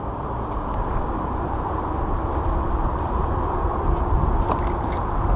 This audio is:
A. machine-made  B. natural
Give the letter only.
B